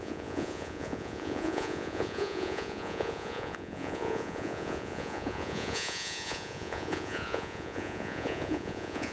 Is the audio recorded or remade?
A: remade